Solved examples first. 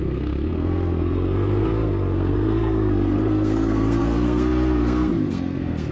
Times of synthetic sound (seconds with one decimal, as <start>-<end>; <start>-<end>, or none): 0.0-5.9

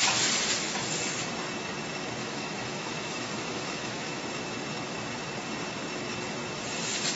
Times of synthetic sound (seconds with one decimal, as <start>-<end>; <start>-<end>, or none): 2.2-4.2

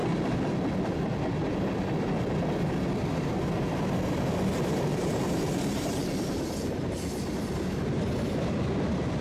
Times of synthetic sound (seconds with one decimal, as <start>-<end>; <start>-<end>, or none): 3.0-3.7; 4.9-6.9

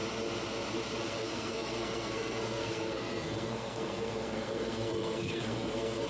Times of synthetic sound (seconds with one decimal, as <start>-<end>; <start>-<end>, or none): 1.0-6.1